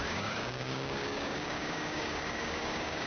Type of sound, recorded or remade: remade